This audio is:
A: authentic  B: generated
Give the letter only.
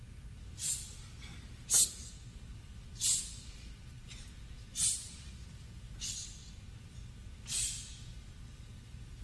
A